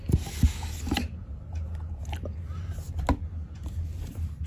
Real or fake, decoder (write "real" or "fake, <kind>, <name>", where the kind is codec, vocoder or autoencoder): real